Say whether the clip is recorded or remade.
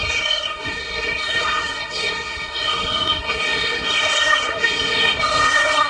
remade